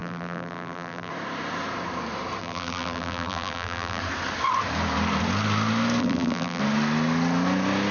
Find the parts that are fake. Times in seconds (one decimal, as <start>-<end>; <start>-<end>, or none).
0.0-1.1; 2.4-4.0; 6.0-6.6